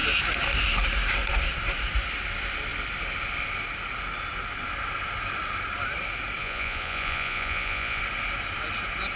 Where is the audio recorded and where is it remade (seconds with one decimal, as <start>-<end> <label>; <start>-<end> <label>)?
0.0-6.4 recorded; 6.4-8.0 remade; 8.0-9.2 recorded